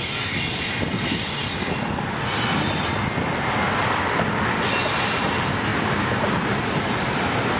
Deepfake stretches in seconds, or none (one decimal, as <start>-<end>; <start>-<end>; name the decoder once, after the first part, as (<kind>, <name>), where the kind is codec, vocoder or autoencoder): none